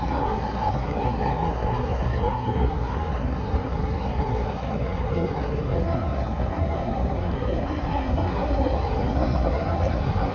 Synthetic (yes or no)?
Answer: yes